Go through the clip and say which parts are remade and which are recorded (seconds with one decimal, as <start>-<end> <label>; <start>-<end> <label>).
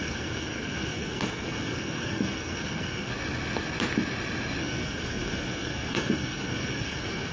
0.0-3.1 remade; 3.1-4.6 recorded; 4.6-7.3 remade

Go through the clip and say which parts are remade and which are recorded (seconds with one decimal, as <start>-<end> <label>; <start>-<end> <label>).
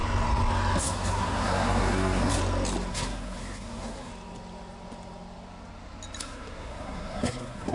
0.0-0.8 recorded; 0.8-2.4 remade; 2.4-2.9 recorded; 2.9-4.1 remade; 4.1-6.2 recorded; 6.2-7.7 remade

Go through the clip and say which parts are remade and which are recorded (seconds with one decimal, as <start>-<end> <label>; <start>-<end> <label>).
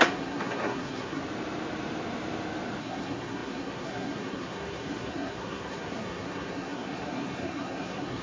0.0-1.2 remade; 1.2-2.8 recorded; 2.8-8.2 remade